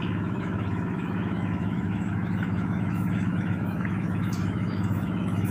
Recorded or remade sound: remade